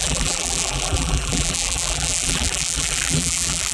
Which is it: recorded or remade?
remade